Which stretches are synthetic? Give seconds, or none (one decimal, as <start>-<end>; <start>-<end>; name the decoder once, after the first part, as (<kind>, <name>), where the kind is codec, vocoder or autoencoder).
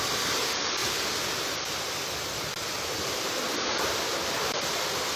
none